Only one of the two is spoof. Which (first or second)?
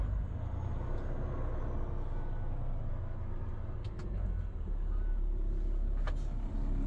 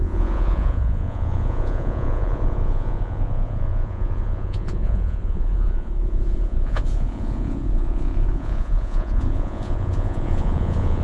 second